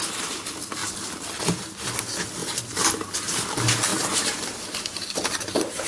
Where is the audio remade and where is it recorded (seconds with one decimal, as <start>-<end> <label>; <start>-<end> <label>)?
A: 0.0-2.4 recorded; 2.4-3.4 remade; 3.4-3.9 recorded; 3.9-5.9 remade